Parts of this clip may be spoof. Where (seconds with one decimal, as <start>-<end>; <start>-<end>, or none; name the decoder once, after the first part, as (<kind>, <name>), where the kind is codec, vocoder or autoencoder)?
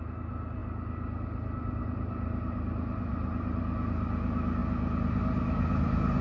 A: none